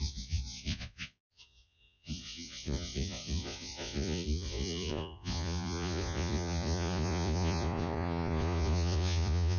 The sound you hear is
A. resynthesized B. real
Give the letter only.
A